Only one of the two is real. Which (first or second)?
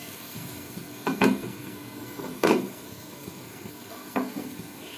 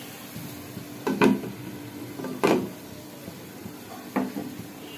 second